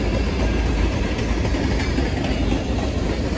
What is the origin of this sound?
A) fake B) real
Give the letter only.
B